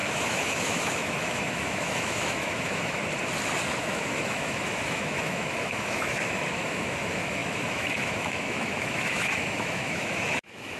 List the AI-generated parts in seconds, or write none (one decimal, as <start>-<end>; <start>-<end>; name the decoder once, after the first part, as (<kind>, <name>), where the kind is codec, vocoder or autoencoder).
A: 0.0-3.0 (autoencoder, DAC-VAE); 3.8-10.8

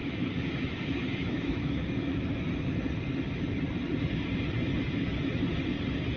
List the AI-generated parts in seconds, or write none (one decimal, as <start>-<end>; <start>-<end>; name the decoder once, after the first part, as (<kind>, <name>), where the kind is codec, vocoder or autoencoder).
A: 0.0-2.2 (autoencoder, DAC-VAE)

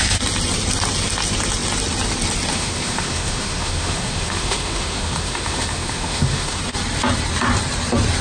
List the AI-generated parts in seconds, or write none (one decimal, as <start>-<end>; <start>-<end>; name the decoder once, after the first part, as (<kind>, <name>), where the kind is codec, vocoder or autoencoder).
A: 2.5-6.6 (autoencoder, DAC-VAE)

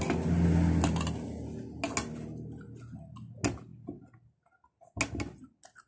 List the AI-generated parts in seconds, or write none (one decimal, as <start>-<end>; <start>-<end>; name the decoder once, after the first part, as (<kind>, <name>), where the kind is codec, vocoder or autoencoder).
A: none

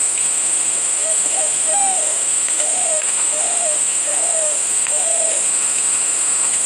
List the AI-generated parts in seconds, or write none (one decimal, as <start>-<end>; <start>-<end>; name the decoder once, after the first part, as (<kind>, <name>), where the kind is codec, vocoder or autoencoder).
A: 0.0-6.7 (autoencoder, DAC-VAE)

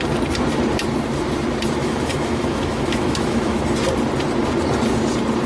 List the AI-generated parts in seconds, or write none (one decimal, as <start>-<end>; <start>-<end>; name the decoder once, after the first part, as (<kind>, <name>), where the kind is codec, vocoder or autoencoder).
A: 1.8-3.6 (autoencoder, DAC-VAE)